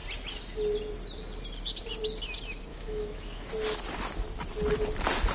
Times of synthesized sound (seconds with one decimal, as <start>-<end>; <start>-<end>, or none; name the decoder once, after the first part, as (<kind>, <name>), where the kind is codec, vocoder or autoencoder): 2.7-3.5 (autoencoder, DAC-VAE)